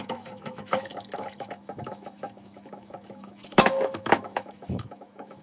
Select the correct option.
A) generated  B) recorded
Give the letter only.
A